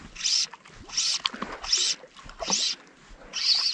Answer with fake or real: real